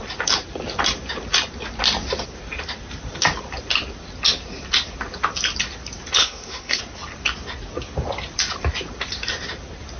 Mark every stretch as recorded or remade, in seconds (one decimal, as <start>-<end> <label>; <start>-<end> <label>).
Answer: 0.0-6.2 recorded; 6.2-6.8 remade; 6.8-10.0 recorded

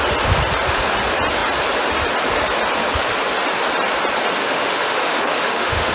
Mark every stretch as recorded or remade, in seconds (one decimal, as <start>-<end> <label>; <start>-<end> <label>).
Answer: 0.0-4.4 recorded; 4.4-5.9 remade

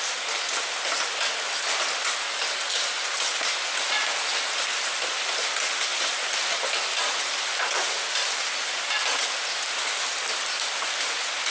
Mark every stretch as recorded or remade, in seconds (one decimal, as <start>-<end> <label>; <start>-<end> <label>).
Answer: 0.0-11.5 recorded

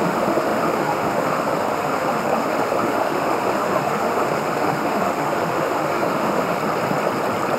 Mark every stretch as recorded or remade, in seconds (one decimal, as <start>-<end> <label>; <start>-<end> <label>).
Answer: 0.0-6.6 remade; 6.6-7.6 recorded